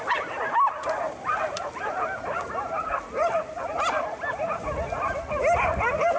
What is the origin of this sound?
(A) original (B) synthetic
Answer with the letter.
A